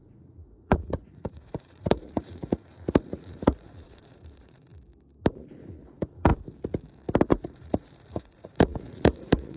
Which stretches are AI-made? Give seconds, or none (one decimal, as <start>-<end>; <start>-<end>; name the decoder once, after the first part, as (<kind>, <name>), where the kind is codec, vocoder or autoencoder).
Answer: 0.0-4.7 (vocoder, Vocos); 5.3-6.3; 7.3-9.6